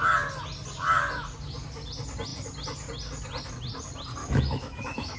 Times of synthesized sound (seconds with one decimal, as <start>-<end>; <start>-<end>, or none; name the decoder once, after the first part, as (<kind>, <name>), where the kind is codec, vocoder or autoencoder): 4.2-5.2 (autoencoder, DAC-VAE)